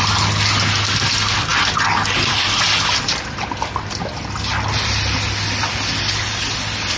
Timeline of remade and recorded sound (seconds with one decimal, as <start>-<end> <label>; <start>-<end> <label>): 0.0-7.0 recorded